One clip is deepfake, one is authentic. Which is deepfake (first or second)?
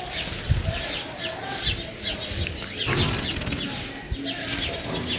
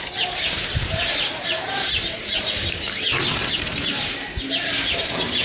second